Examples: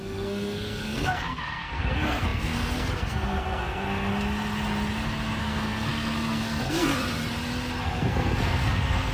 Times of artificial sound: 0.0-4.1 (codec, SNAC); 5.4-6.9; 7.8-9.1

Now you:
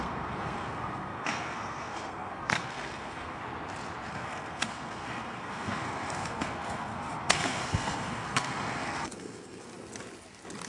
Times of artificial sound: 0.0-3.4 (codec, SNAC); 4.1-9.7

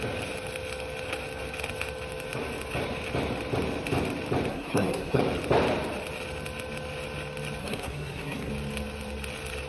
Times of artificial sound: 4.5-5.2 (codec, SNAC); 7.6-8.5

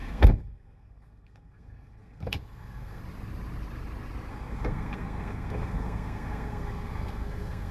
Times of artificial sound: 0.0-3.0 (codec, SNAC); 4.3-7.7

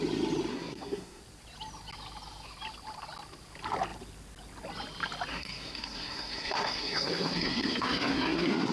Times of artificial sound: 0.5-1.2 (codec, SNAC); 5.3-8.7

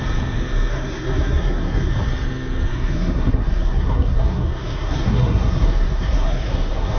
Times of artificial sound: 0.7-1.9 (codec, SNAC); 2.7-7.0